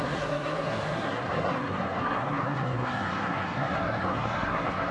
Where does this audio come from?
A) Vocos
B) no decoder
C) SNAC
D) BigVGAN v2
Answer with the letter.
C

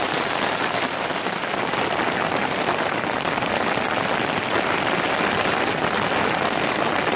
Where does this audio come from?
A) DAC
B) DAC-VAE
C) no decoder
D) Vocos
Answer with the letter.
C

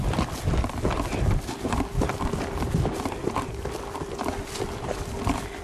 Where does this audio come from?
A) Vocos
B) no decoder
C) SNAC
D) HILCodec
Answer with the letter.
B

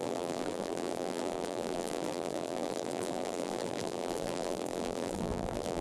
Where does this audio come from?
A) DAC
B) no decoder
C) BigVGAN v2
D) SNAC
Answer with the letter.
C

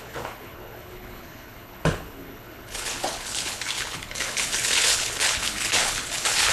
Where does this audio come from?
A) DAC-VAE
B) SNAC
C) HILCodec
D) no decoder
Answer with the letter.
C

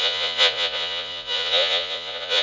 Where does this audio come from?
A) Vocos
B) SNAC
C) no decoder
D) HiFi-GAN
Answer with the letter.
A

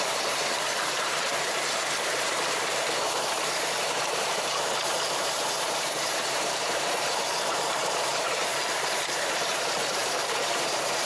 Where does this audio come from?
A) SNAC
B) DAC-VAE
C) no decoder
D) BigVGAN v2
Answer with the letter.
D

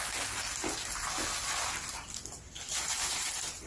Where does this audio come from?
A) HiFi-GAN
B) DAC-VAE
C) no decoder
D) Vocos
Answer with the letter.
C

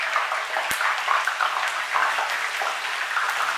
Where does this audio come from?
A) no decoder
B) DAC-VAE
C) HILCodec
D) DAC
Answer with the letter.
A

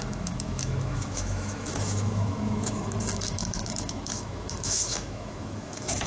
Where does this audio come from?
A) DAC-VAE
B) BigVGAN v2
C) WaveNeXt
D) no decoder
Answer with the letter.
A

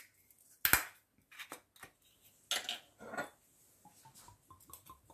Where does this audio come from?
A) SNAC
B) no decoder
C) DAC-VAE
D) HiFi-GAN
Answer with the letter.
B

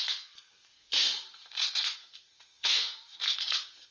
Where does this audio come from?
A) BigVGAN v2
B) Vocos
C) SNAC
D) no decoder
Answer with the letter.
C